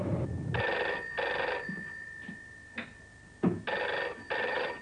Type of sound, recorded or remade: recorded